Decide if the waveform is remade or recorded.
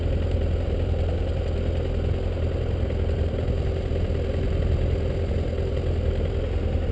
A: recorded